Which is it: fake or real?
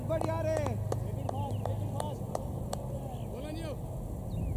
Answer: real